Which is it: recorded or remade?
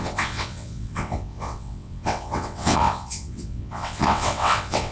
remade